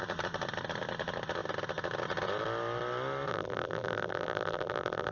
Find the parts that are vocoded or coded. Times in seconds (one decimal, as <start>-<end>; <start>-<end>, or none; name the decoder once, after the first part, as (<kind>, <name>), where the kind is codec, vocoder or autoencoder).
3.3-5.1 (vocoder, BigVGAN v2)